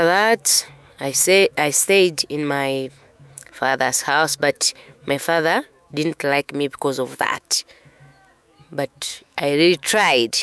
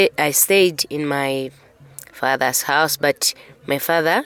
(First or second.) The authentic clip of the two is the second